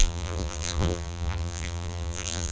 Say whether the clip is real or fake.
fake